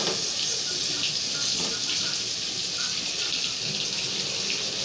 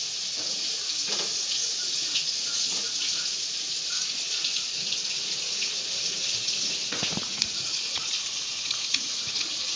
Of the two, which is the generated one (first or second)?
second